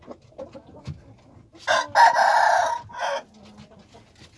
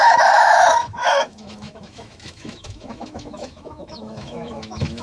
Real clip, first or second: first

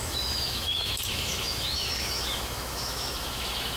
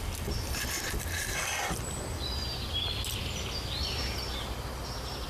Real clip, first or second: second